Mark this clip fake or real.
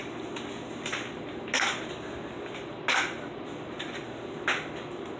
real